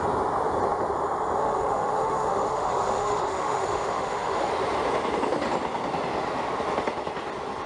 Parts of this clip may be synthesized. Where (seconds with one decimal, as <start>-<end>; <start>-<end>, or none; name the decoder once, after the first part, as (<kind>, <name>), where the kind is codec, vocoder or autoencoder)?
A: 1.4-4.5 (autoencoder, DAC-VAE)

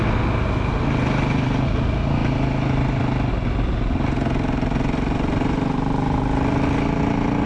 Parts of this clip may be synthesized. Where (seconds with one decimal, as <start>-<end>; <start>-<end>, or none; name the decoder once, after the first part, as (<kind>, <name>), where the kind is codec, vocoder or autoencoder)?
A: none

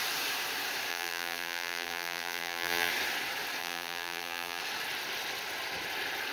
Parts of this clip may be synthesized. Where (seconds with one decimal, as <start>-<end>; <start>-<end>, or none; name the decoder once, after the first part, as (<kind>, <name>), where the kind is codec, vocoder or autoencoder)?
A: 0.9-2.9 (vocoder, BigVGAN v2); 3.6-4.6

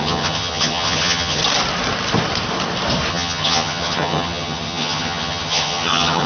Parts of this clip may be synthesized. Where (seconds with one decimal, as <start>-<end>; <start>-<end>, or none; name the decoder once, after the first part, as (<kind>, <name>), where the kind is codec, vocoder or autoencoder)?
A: 0.0-1.4 (vocoder, HiFi-GAN); 3.1-6.3

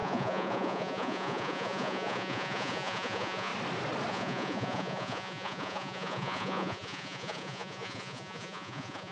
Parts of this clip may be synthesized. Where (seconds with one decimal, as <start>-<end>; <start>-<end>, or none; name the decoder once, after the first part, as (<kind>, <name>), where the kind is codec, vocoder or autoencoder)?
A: 0.0-3.5 (vocoder, Vocos); 4.1-9.1

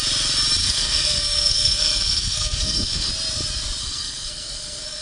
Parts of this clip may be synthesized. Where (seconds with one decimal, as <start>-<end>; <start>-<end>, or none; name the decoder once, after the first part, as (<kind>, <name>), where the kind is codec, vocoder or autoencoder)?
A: 0.6-3.1 (codec, SNAC); 3.8-5.0

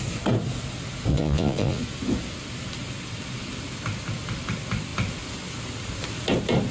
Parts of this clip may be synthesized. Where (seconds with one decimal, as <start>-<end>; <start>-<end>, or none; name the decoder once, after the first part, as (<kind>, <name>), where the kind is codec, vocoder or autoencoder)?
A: 1.1-1.8 (vocoder, Vocos)

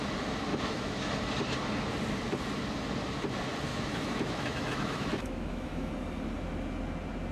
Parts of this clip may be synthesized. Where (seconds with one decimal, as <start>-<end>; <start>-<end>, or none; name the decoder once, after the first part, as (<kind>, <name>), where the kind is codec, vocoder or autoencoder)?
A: 0.5-1.1 (autoencoder, DAC-VAE); 3.7-5.9